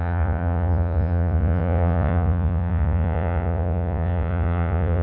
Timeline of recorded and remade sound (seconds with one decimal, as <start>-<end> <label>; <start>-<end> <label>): 0.0-5.0 remade